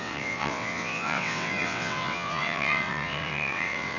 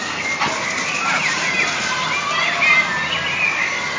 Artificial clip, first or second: first